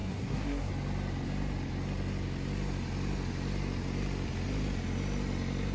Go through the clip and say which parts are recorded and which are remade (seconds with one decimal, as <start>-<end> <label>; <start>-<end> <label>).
0.0-0.7 remade; 0.7-5.7 recorded